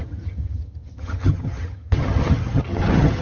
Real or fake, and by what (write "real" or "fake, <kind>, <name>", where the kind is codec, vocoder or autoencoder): fake, vocoder, HiFi-GAN